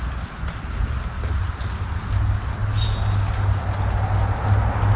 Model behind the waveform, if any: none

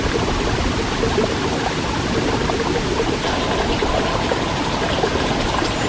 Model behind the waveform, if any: none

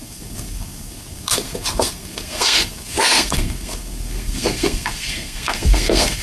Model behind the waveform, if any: codec, SNAC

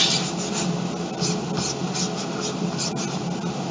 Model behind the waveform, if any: none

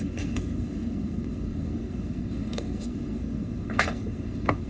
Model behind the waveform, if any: codec, SNAC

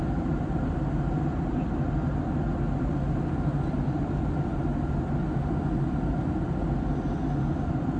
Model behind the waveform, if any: none